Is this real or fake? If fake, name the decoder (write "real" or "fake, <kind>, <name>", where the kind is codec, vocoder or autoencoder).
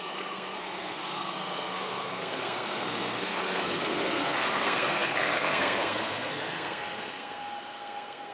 fake, codec, SNAC